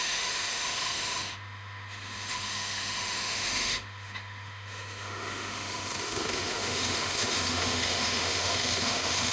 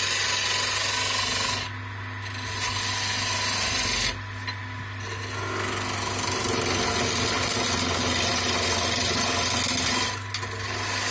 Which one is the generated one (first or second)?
first